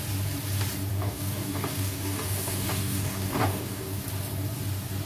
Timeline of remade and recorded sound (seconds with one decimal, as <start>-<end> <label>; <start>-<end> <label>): 0.0-0.9 recorded; 0.9-4.0 remade; 4.0-5.1 recorded